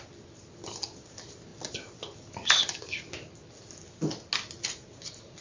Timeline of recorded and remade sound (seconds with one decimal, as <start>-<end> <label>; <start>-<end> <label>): 0.0-5.4 recorded